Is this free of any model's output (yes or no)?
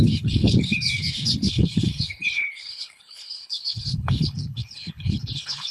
no